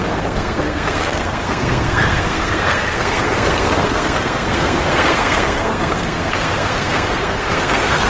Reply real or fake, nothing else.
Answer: fake